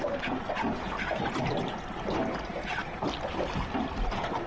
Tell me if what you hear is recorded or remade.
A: recorded